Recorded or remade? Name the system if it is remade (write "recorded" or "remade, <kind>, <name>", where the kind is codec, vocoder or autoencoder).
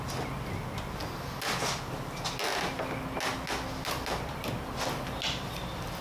recorded